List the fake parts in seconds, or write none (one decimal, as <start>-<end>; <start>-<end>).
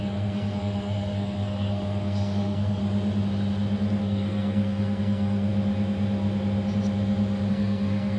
0.0-2.8; 4.0-5.5; 7.5-8.2